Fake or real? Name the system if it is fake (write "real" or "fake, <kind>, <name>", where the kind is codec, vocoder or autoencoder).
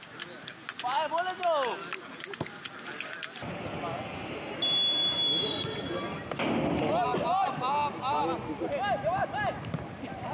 real